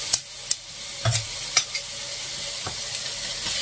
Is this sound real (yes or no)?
yes